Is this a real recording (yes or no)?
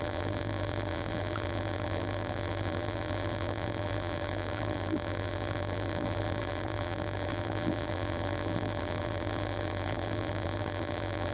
no